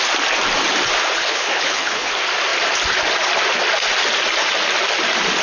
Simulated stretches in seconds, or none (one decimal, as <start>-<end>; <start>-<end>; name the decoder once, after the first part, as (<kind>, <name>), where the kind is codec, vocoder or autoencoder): 1.2-2.1 (codec, HILCodec)